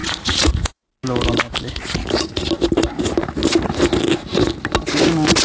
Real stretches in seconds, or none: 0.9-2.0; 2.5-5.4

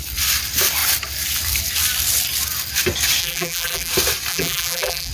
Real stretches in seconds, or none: 0.0-3.2; 3.9-4.3

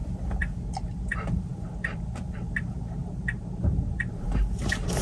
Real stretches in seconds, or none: 0.0-0.9